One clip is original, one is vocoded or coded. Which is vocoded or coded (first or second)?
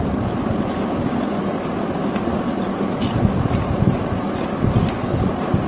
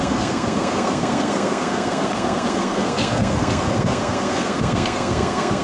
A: second